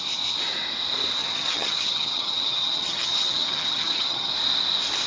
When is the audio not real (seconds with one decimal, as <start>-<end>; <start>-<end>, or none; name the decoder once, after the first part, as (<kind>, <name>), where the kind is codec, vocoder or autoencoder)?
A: 1.2-4.3 (vocoder, HiFi-GAN)